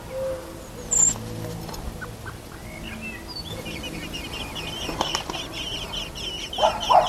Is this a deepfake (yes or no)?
no